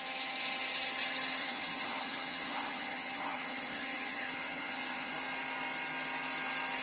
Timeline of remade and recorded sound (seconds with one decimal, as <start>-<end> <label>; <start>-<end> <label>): 0.0-1.4 recorded; 1.4-5.1 remade; 5.1-6.8 recorded